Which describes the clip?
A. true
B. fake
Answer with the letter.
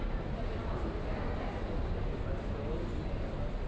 A